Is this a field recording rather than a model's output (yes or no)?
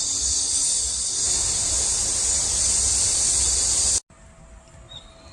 yes